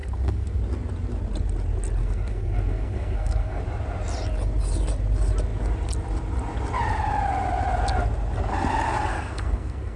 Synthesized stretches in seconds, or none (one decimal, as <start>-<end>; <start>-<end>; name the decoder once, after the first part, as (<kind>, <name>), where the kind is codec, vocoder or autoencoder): 0.0-0.6 (codec, SNAC); 2.0-3.6; 9.1-10.0